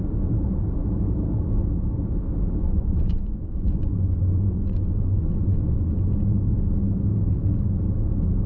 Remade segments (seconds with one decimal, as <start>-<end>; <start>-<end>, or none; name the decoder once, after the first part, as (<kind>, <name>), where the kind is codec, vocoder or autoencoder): 2.6-6.4 (vocoder, Vocos)